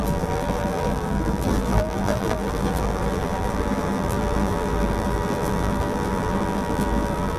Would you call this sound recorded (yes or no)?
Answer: no